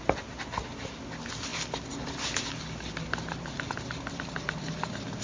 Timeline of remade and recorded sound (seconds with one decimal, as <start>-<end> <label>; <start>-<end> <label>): 0.0-5.2 recorded